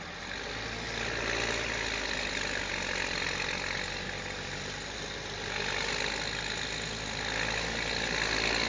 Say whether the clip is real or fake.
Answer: real